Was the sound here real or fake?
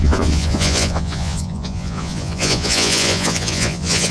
fake